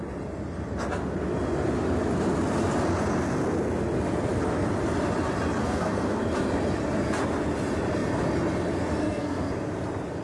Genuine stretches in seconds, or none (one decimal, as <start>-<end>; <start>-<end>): 0.0-5.6; 6.2-9.0; 9.5-10.2